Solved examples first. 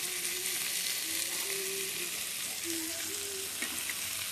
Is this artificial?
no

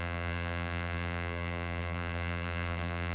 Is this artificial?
yes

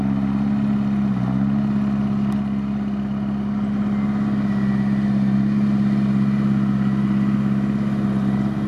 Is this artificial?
no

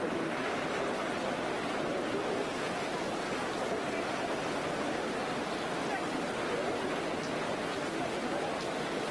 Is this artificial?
no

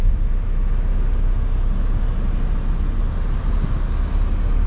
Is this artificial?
no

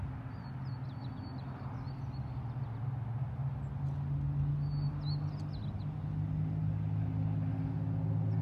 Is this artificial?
no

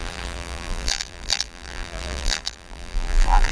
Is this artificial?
yes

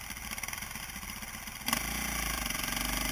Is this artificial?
yes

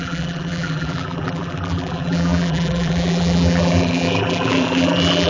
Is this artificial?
yes